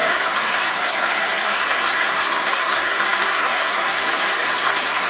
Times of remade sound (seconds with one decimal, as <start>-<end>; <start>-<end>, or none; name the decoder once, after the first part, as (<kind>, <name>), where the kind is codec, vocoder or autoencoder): 0.0-5.1 (codec, SNAC)